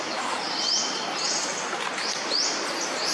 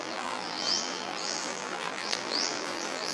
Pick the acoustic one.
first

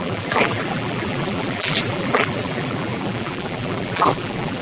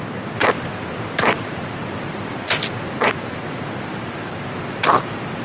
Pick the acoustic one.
second